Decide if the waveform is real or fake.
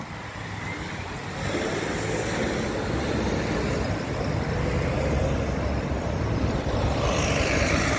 real